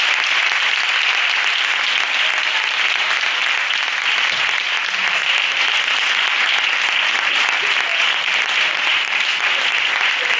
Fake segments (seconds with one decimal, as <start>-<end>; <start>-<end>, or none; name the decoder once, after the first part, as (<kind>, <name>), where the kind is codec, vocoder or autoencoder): 7.9-9.8 (vocoder, BigVGAN v2)